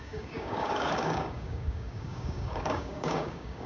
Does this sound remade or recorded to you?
remade